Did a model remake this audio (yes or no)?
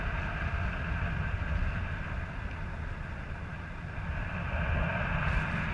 no